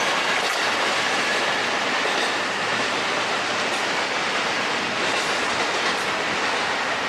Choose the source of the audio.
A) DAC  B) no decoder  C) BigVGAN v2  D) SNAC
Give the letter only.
B